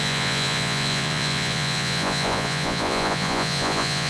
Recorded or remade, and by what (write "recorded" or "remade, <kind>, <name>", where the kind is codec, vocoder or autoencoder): remade, vocoder, Vocos